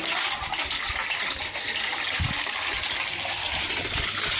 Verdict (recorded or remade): recorded